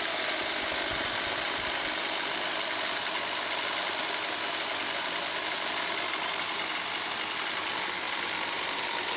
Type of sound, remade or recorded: recorded